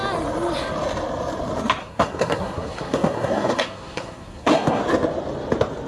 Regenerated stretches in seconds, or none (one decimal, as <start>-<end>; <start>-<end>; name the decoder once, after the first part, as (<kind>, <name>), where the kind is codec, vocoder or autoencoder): 1.8-4.8 (codec, SNAC)